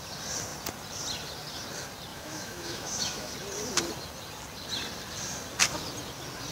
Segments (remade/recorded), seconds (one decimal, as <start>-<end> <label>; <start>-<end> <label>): 0.0-2.1 recorded; 2.1-3.3 remade; 3.3-6.5 recorded